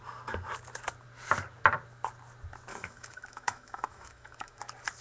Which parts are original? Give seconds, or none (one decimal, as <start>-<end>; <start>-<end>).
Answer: 0.0-2.7; 4.6-5.0